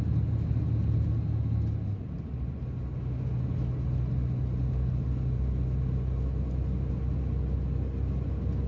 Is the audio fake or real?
real